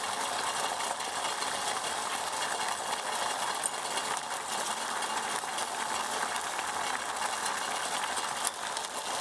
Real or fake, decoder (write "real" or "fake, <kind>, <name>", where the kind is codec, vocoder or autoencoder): real